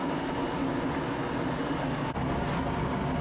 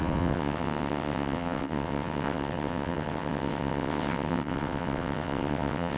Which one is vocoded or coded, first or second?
second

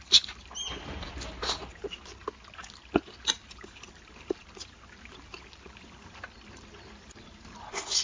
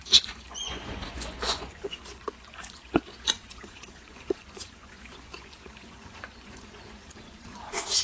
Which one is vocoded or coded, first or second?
second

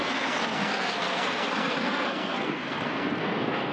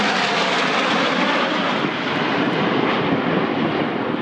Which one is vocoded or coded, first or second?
first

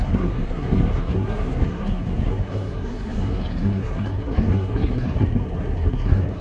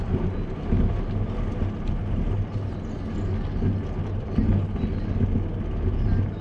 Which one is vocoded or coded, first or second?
first